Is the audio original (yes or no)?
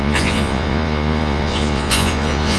no